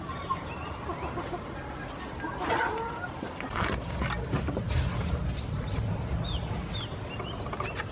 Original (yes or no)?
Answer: yes